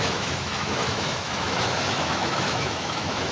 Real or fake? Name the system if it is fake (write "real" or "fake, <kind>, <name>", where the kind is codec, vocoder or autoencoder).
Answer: fake, autoencoder, DAC-VAE